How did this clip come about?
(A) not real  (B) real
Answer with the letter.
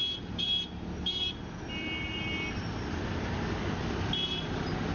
B